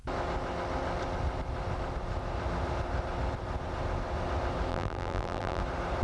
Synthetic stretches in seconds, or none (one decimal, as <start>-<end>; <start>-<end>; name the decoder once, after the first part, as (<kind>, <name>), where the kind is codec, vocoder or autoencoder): 4.7-5.6 (vocoder, BigVGAN v2)